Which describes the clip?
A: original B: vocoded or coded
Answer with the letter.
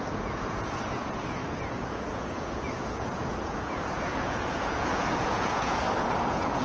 B